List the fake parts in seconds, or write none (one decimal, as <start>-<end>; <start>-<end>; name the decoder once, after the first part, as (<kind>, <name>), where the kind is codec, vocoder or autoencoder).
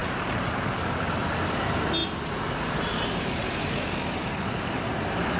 0.0-0.9 (vocoder, BigVGAN v2); 2.0-5.4